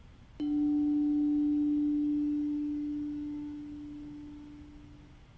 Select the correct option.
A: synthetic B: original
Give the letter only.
B